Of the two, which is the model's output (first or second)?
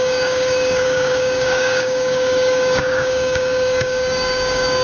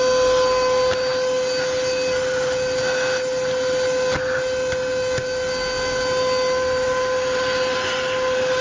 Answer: first